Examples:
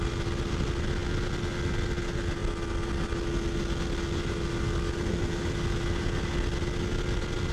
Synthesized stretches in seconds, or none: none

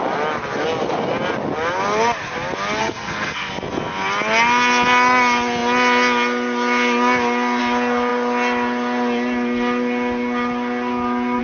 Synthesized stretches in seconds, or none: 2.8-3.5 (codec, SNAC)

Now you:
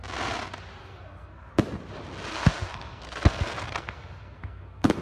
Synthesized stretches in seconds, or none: 0.8-1.5 (codec, SNAC); 2.3-5.0